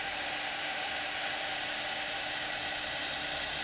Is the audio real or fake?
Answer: real